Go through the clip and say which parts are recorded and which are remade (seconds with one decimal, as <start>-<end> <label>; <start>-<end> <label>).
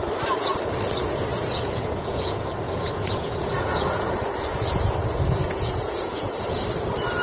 0.0-1.3 recorded; 1.3-4.1 remade; 4.1-5.4 recorded; 5.4-6.6 remade; 6.6-7.2 recorded